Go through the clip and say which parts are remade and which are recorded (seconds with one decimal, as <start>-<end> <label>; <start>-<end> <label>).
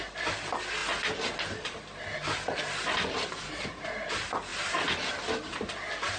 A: 0.0-6.2 recorded